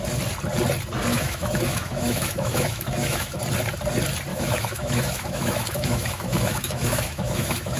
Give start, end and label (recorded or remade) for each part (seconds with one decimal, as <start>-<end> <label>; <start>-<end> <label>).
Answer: 0.0-1.1 recorded; 1.1-3.4 remade; 3.4-4.3 recorded; 4.3-7.8 remade